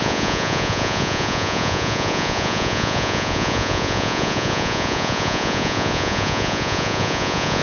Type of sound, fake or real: fake